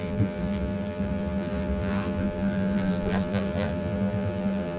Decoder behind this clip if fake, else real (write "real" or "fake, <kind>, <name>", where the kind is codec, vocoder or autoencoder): fake, vocoder, BigVGAN v2